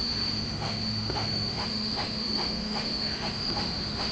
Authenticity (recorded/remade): remade